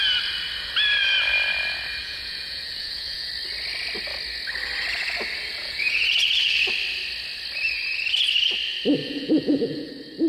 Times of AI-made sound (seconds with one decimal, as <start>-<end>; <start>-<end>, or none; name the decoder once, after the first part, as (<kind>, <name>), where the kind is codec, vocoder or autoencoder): 2.0-3.3 (vocoder, Vocos); 5.6-6.1; 9.0-9.9